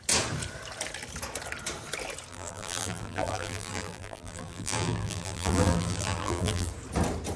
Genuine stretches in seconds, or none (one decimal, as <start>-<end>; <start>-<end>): 0.0-2.3; 6.7-7.4